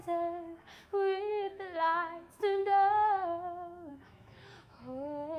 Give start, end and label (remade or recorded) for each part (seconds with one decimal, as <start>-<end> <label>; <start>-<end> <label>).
0.0-5.4 remade